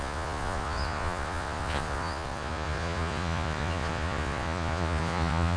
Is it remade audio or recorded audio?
remade